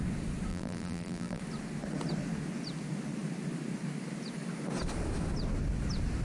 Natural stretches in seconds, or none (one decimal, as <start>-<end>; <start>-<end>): 0.0-0.5; 1.4-6.2